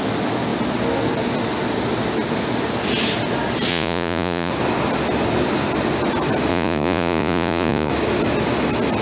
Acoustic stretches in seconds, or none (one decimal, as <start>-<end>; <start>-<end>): 0.0-3.7; 4.5-6.5; 7.9-9.0